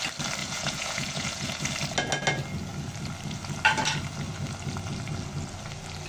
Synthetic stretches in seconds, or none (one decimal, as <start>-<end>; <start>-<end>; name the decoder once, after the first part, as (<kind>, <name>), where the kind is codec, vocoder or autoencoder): 0.4-1.6 (vocoder, Vocos)